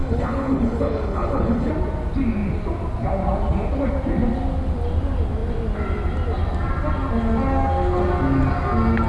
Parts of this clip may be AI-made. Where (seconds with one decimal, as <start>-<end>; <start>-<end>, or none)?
0.0-1.7